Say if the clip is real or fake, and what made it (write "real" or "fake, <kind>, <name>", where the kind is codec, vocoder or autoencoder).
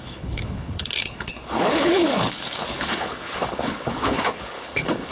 fake, codec, HILCodec